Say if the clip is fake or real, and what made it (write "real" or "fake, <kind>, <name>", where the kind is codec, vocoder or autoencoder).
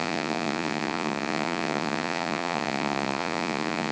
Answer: fake, vocoder, Vocos